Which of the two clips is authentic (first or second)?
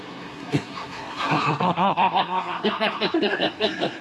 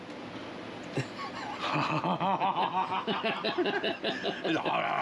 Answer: second